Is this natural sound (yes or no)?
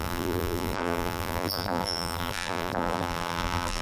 no